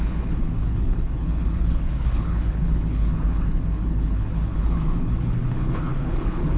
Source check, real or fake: fake